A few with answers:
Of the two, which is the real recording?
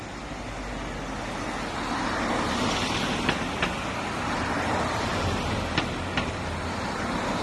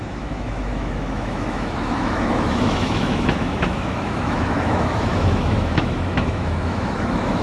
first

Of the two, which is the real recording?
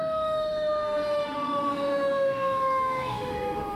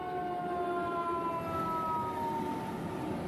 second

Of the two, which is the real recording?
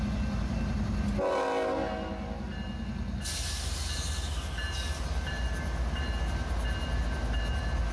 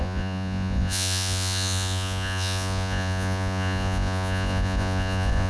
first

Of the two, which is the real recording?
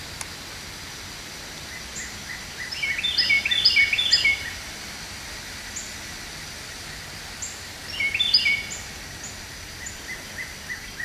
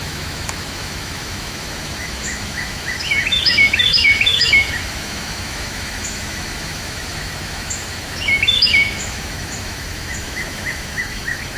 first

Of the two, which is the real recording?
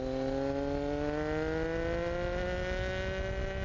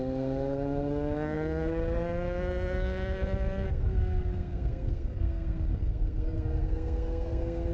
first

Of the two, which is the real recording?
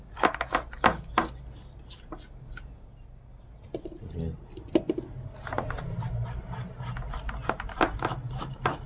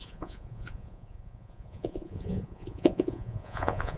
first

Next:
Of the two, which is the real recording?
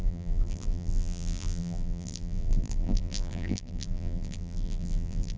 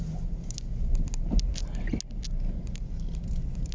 second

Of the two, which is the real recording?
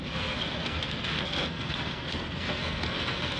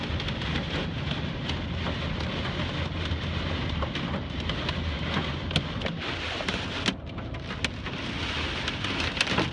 second